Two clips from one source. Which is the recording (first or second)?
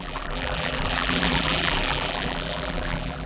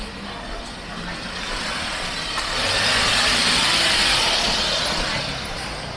second